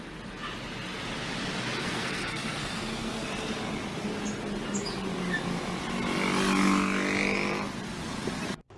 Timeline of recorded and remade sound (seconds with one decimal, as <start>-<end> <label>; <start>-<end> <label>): 0.0-1.8 recorded; 1.8-3.3 remade; 3.3-8.8 recorded

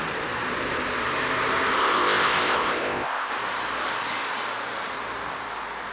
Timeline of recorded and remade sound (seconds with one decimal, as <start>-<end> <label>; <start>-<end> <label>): 0.0-1.8 recorded; 1.8-3.3 remade; 3.3-5.9 recorded

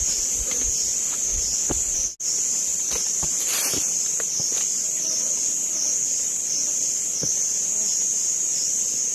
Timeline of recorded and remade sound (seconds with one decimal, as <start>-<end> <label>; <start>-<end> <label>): 0.0-2.7 recorded; 2.7-4.2 remade; 4.2-9.1 recorded

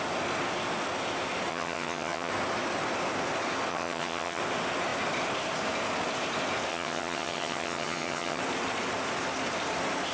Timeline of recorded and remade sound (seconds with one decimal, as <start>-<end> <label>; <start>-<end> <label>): 0.0-1.5 recorded; 1.5-2.3 remade; 2.3-3.7 recorded; 3.7-4.4 remade; 4.4-6.7 recorded; 6.7-8.4 remade; 8.4-10.1 recorded

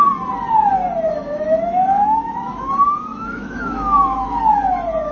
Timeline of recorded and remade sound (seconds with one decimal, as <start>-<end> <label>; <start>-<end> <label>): 0.0-1.2 recorded; 1.2-2.7 remade; 2.7-3.1 recorded; 3.1-4.4 remade; 4.4-5.1 recorded

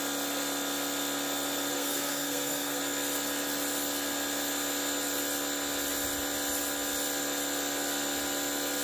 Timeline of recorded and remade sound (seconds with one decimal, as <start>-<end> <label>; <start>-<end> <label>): 0.0-1.7 recorded; 1.7-2.8 remade; 2.8-8.8 recorded

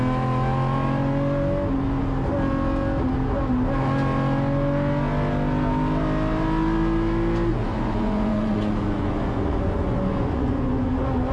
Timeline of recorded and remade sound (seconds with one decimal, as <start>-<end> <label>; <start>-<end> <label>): 0.0-7.5 recorded; 7.5-10.9 remade; 10.9-11.3 recorded